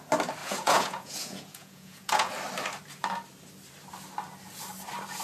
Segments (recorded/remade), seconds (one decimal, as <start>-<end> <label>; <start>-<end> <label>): 0.0-0.4 recorded; 0.4-2.3 remade; 2.3-5.2 recorded